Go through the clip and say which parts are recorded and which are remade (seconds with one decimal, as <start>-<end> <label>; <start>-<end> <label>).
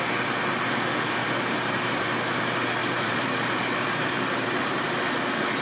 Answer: 0.0-1.2 recorded; 1.2-2.4 remade; 2.4-2.8 recorded; 2.8-5.0 remade; 5.0-5.6 recorded